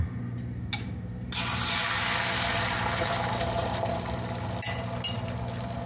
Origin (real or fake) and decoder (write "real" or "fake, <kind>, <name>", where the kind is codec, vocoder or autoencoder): real